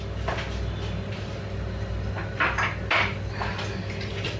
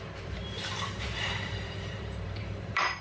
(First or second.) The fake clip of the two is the second